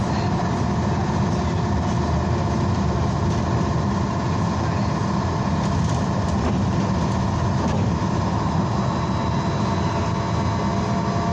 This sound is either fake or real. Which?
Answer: real